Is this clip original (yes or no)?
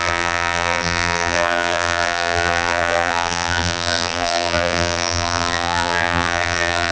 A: no